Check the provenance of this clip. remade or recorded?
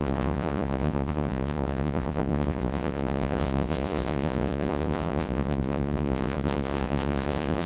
remade